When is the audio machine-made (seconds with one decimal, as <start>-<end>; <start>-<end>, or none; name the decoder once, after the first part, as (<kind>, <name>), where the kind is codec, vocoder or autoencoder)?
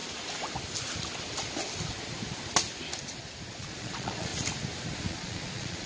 3.5-4.3 (vocoder, Vocos); 5.1-5.9